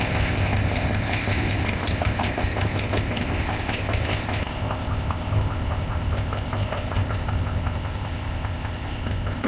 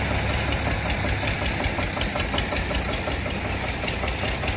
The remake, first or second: first